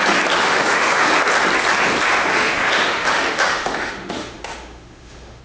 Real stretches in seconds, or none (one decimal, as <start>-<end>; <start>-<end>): 0.0-0.4; 1.2-2.3